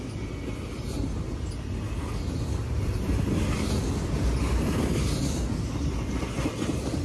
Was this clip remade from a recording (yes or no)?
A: no